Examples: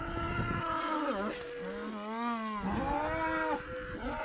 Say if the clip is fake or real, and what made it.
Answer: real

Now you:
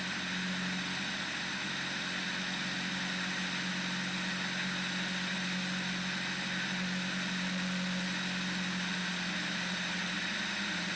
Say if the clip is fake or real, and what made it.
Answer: real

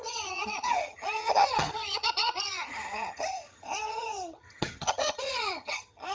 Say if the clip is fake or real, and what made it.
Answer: fake, vocoder, HiFi-GAN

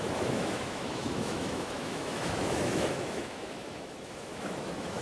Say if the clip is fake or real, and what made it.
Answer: fake, autoencoder, DAC-VAE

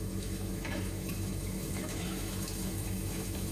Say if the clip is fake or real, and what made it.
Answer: fake, autoencoder, DAC-VAE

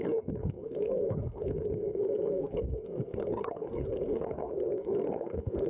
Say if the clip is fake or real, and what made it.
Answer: fake, codec, SNAC